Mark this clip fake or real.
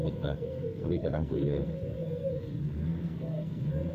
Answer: fake